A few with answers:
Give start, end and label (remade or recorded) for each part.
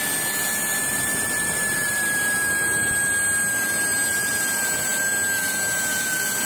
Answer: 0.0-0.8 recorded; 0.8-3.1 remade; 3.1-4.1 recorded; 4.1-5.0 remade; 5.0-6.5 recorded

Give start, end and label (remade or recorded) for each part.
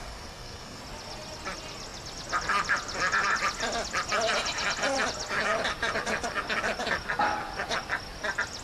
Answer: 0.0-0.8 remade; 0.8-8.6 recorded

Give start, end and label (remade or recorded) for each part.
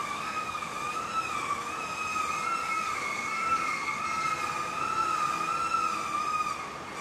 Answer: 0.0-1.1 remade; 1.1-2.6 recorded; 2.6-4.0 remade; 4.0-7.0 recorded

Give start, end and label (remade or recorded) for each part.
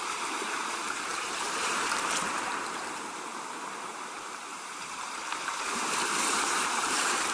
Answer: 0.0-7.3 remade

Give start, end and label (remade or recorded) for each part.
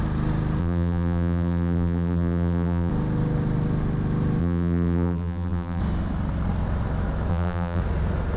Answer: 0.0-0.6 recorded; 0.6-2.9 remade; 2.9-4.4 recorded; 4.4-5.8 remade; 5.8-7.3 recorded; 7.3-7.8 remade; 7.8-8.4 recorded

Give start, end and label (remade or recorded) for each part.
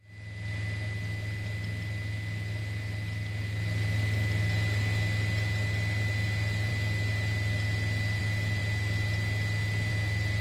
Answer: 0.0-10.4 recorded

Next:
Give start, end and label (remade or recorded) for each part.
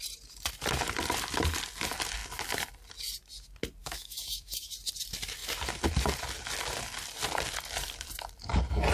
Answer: 0.0-3.8 recorded; 3.8-4.7 remade; 4.7-8.9 recorded